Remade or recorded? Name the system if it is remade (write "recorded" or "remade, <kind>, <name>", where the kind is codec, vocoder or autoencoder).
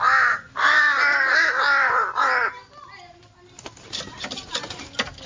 recorded